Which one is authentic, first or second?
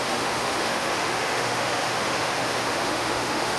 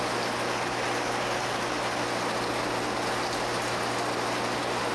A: second